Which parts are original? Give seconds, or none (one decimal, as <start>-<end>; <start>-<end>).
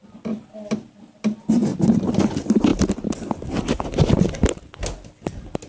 0.0-5.7